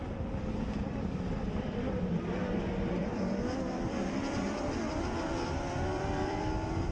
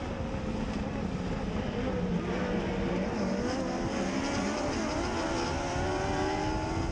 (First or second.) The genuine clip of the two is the second